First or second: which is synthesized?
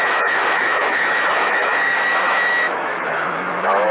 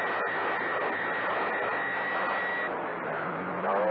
first